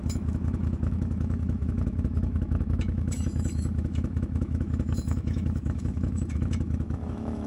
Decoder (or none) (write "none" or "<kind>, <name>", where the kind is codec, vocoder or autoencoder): autoencoder, DAC-VAE